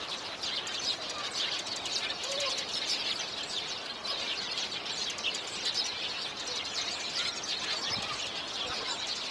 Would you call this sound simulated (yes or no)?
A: yes